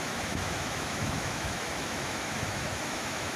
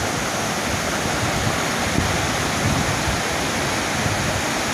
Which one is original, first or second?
second